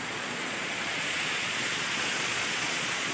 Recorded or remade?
remade